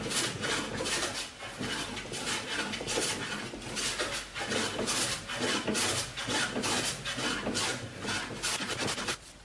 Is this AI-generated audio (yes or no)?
no